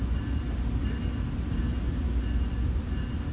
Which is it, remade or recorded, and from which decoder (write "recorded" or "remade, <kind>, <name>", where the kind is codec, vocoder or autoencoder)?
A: recorded